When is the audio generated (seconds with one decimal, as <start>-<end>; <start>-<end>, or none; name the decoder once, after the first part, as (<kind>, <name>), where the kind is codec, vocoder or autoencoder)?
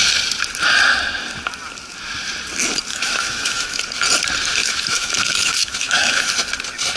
2.9-3.8 (autoencoder, DAC-VAE); 4.6-6.3